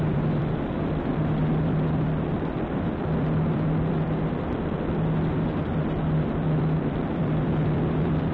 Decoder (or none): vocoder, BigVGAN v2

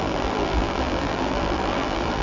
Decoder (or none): vocoder, BigVGAN v2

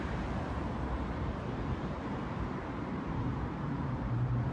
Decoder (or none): vocoder, BigVGAN v2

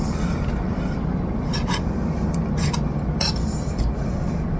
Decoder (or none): vocoder, BigVGAN v2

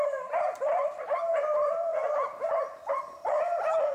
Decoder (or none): vocoder, BigVGAN v2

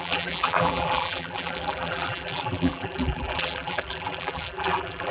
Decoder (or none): vocoder, BigVGAN v2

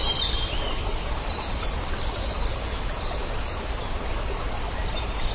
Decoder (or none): none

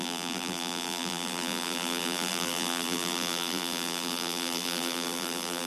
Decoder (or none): vocoder, BigVGAN v2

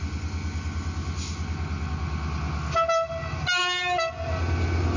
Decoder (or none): none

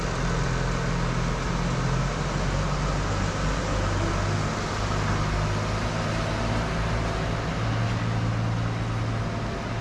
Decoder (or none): none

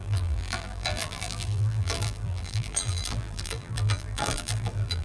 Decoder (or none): vocoder, BigVGAN v2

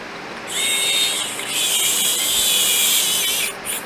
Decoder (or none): none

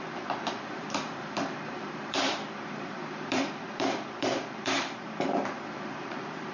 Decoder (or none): vocoder, BigVGAN v2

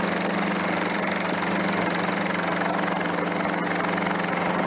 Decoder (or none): none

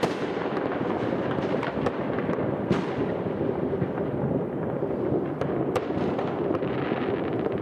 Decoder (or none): vocoder, BigVGAN v2